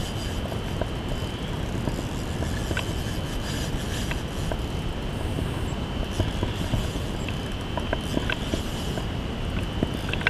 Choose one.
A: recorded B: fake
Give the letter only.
A